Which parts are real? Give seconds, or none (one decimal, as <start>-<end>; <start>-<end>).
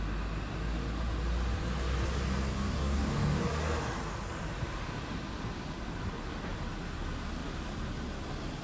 0.0-2.5; 3.4-8.6